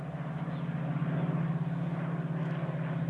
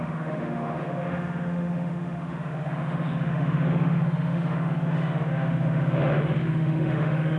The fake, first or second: second